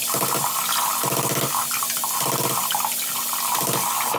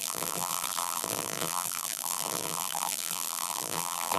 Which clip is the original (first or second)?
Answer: first